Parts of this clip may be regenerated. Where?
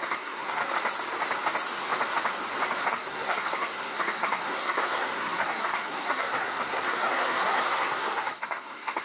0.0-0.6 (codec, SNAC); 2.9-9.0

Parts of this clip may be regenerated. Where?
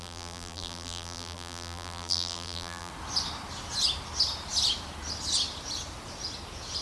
0.0-2.9 (vocoder, BigVGAN v2)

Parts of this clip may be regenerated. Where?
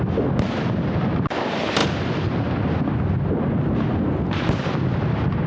none